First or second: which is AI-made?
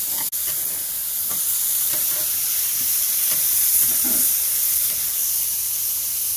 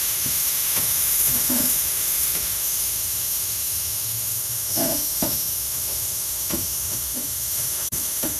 second